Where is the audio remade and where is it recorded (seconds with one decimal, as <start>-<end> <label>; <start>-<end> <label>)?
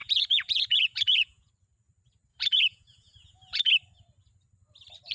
0.0-1.5 remade; 1.5-2.3 recorded; 2.3-3.7 remade; 3.7-5.1 recorded